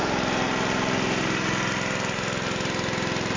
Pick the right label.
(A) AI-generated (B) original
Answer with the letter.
B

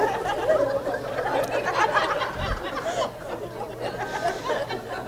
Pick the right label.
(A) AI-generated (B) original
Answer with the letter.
B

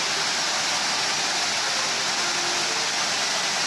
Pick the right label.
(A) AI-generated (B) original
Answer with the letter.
B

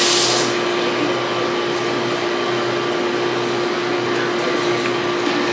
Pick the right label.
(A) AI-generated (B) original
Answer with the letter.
B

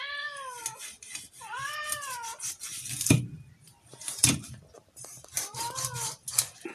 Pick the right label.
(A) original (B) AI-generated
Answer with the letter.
A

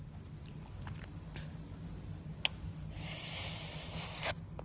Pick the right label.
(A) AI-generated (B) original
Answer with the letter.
B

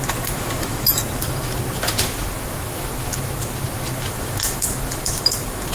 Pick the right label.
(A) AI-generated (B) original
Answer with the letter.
A